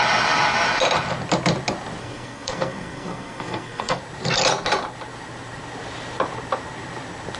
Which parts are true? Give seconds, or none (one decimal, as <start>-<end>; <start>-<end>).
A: 0.0-2.0; 4.0-7.4